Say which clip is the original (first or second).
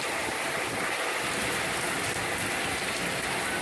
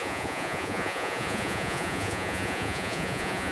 first